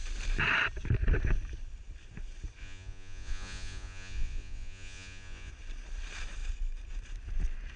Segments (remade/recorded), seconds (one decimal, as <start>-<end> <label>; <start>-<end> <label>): 0.0-2.6 recorded; 2.6-5.5 remade; 5.5-7.8 recorded